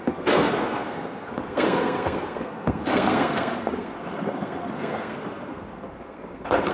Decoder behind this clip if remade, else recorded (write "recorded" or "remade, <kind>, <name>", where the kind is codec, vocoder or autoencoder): remade, codec, SNAC